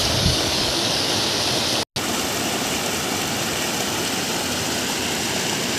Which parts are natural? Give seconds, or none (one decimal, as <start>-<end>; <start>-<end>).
1.1-5.8